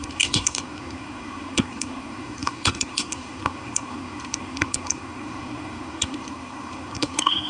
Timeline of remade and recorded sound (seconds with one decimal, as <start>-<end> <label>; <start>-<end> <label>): 0.0-7.5 remade